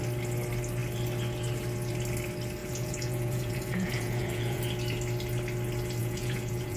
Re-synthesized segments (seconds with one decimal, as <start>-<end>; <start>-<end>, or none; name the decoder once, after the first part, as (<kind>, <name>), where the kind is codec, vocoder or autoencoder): 2.6-4.6 (vocoder, Vocos); 6.0-6.8